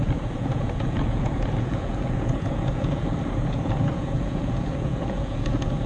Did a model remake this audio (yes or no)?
yes